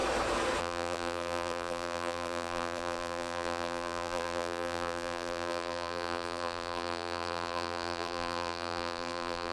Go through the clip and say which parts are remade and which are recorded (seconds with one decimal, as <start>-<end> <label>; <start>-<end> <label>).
0.0-0.6 recorded; 0.6-9.5 remade